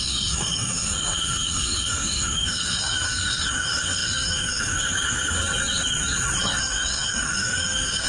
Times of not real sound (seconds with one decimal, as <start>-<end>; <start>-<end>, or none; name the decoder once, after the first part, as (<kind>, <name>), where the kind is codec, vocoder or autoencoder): 0.0-5.4 (autoencoder, DAC-VAE); 6.6-8.1